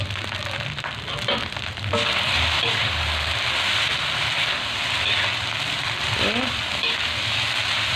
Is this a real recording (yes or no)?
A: yes